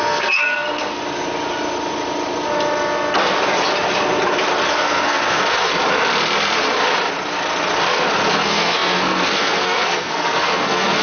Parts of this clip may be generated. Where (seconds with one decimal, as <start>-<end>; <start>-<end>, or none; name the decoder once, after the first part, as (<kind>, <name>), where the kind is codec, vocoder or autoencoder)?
0.0-1.0 (codec, SNAC); 4.7-5.7; 8.3-11.0